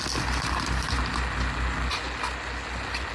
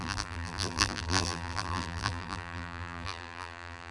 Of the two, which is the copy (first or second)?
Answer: second